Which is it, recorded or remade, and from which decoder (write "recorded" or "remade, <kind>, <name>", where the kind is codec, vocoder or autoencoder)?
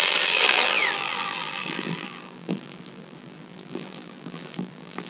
remade, vocoder, BigVGAN v2